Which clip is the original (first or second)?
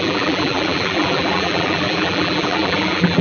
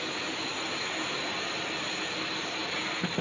second